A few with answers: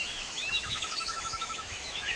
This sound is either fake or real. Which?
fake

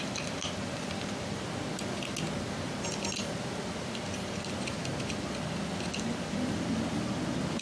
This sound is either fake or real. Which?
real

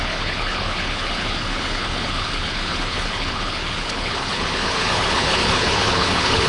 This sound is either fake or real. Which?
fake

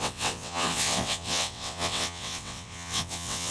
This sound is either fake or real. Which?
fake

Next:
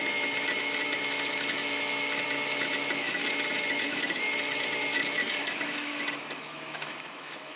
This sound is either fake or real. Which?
fake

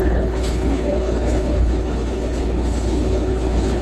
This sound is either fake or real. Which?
fake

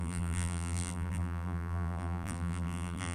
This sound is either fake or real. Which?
fake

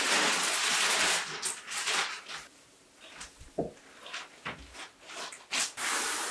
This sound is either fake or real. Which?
real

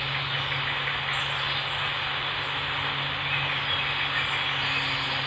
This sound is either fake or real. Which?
real